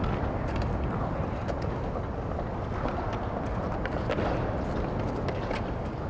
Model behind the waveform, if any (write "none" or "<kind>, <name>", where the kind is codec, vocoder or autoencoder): none